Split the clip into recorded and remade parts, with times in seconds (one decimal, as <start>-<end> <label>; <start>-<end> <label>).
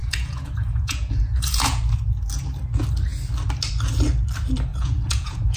0.0-1.8 remade; 1.8-4.7 recorded; 4.7-5.6 remade